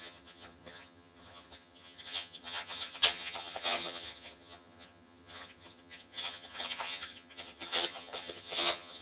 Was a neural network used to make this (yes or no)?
yes